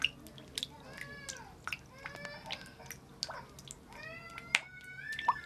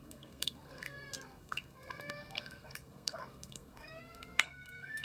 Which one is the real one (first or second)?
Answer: first